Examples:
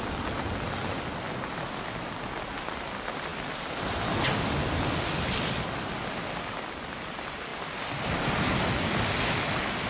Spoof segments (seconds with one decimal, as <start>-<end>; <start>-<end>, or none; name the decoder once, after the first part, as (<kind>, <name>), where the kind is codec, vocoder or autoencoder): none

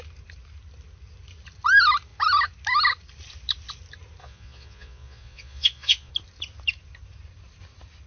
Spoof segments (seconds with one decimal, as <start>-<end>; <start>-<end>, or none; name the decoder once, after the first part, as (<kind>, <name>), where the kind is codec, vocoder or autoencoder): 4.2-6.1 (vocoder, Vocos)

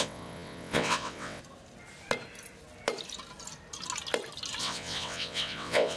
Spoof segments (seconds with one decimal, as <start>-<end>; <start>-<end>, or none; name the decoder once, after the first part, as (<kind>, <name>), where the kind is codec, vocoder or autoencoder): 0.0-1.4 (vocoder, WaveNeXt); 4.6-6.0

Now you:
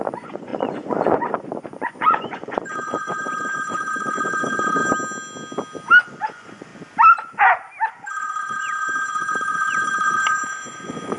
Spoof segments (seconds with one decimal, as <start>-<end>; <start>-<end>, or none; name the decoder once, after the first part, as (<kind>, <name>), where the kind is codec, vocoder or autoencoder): 0.0-4.8 (vocoder, Vocos); 6.0-6.7; 7.9-11.2

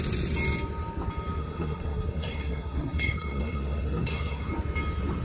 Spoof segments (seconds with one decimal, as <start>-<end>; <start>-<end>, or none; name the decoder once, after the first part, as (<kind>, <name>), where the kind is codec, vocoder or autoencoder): 1.4-4.5 (codec, SNAC)

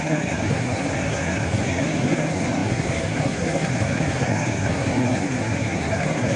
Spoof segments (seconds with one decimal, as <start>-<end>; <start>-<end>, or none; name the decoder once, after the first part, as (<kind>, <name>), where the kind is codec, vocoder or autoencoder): 0.0-6.4 (codec, SNAC)

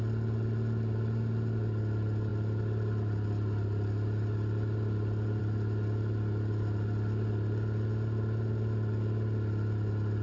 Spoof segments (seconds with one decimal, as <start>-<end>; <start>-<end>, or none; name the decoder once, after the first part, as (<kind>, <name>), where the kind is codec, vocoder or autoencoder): none

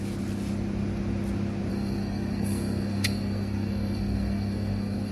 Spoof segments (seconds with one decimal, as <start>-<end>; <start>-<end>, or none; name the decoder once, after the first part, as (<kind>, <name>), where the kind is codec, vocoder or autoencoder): 1.7-5.1 (codec, SNAC)